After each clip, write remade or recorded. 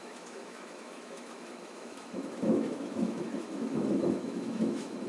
remade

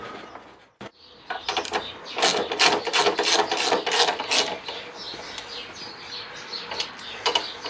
recorded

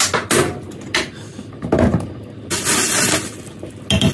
recorded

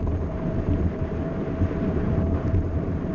remade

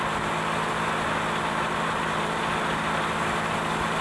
recorded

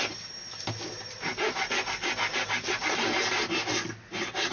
recorded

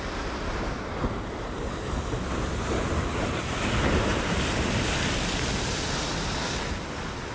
recorded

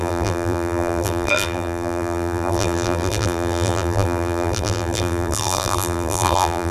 remade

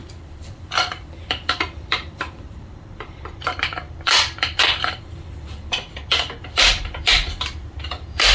remade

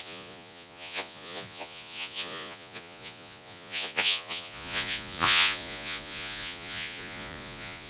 remade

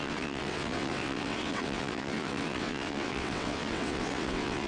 remade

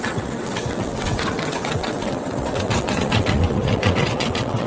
remade